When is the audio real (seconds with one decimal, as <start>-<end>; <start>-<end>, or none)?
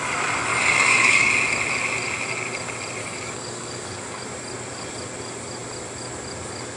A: 0.0-0.5; 1.3-3.0; 4.2-6.8